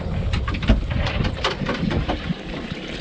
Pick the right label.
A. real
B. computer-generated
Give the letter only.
B